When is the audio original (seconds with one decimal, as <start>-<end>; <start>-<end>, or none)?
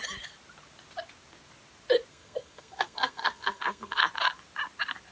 0.0-2.1; 4.0-5.1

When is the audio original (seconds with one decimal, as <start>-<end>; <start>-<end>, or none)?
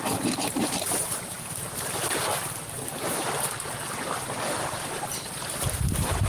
2.3-4.5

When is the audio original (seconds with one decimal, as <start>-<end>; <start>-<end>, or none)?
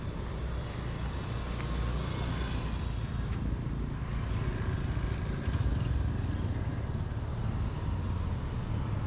0.0-9.1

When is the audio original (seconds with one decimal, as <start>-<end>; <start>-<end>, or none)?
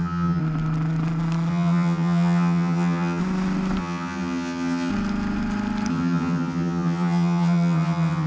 0.4-1.5; 3.2-3.8; 4.9-5.9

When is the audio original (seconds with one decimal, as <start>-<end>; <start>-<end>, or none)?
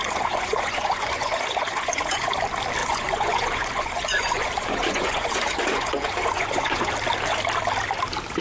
2.4-2.8; 6.9-8.4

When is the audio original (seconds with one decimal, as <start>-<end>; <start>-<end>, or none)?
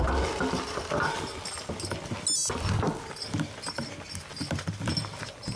0.0-5.6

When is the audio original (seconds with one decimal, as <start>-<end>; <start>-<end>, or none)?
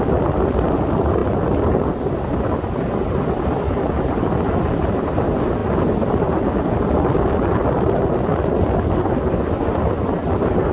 0.0-10.7